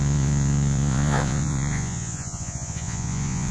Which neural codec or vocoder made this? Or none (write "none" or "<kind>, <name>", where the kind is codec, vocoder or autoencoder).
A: vocoder, Vocos